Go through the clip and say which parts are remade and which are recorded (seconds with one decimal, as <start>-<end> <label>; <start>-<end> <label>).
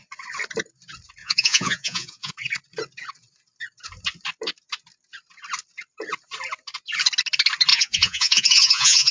0.0-1.2 recorded; 1.2-2.3 remade; 2.3-7.7 recorded; 7.7-9.1 remade